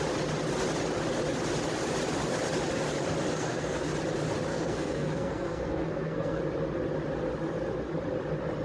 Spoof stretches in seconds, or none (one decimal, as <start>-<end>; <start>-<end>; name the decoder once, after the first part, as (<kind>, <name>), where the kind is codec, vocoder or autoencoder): 3.3-3.9 (codec, SNAC); 4.5-6.4